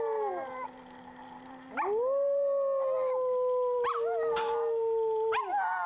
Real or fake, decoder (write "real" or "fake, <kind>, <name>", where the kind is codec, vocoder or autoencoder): real